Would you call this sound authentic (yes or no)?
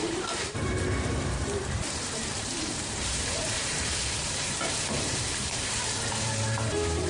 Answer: no